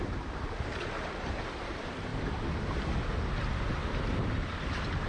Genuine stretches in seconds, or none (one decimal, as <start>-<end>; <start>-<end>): 0.0-5.1